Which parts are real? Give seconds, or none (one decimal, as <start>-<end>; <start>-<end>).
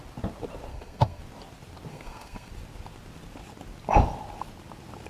0.0-0.7; 1.2-1.9; 2.5-5.1